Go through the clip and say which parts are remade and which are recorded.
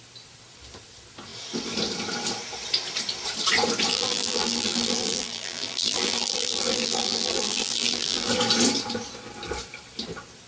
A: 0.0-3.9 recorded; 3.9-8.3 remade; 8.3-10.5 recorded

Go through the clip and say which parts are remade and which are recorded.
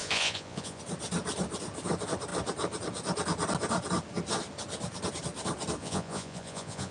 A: 0.0-0.8 remade; 0.8-5.8 recorded; 5.8-6.9 remade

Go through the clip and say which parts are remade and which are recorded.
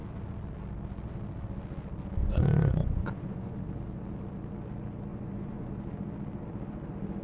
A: 0.0-2.2 recorded; 2.2-3.6 remade; 3.6-5.1 recorded; 5.1-5.7 remade; 5.7-7.2 recorded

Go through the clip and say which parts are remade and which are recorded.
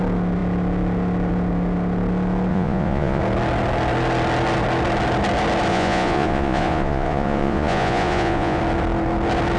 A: 0.0-2.5 recorded; 2.5-3.2 remade; 3.2-5.7 recorded; 5.7-8.6 remade; 8.6-9.6 recorded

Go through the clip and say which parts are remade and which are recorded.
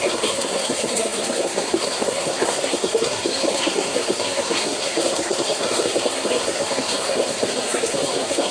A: 0.0-8.5 remade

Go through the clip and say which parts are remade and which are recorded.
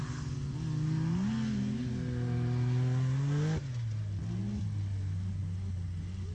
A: 0.0-6.3 recorded